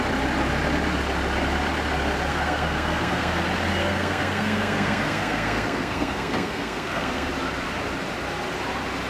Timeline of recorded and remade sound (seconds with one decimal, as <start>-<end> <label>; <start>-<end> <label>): 0.0-2.3 recorded; 2.3-3.4 remade; 3.4-3.8 recorded; 3.8-7.3 remade; 7.3-9.1 recorded